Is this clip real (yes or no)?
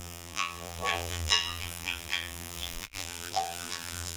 no